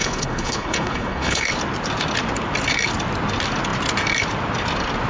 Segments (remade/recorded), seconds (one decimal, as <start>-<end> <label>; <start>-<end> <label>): 0.0-1.5 remade; 1.5-5.1 recorded